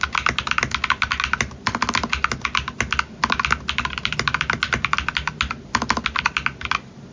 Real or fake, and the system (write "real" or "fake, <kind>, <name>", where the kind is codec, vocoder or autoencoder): real